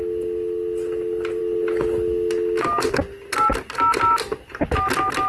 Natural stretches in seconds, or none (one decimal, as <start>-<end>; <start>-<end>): 0.0-5.3